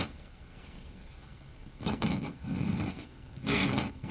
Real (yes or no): no